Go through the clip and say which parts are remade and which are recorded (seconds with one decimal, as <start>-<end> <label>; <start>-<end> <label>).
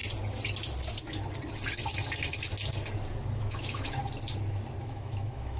0.0-3.4 recorded; 3.4-4.0 remade; 4.0-4.8 recorded; 4.8-5.6 remade